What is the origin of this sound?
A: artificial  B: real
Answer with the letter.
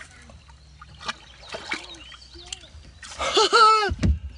B